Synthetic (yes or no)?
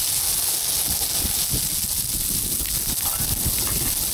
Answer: no